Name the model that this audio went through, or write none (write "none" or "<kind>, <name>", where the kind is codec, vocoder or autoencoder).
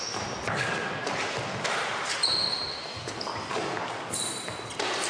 none